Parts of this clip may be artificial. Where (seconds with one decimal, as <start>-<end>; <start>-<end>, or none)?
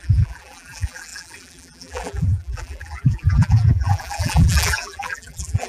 0.0-5.7